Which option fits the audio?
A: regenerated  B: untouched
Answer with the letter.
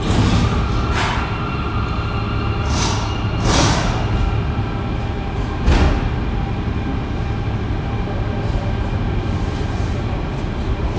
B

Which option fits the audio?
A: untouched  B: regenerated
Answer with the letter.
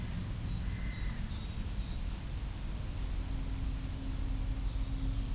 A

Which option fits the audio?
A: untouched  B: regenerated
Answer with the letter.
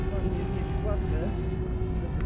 A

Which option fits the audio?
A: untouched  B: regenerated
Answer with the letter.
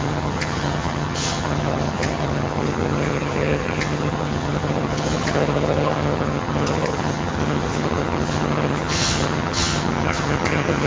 B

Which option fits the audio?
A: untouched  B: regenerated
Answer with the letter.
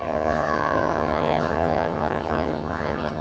B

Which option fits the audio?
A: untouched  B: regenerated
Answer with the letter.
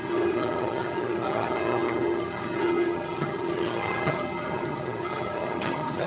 B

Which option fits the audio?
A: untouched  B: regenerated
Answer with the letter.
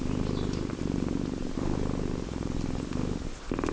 A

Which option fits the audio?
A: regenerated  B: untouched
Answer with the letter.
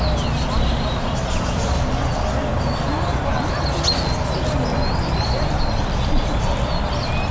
B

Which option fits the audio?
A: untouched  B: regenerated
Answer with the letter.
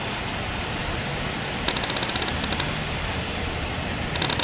A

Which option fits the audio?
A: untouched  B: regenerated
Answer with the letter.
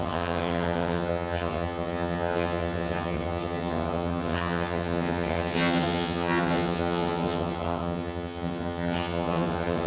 B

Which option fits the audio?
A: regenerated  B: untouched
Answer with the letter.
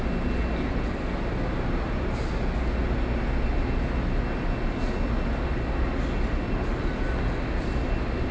B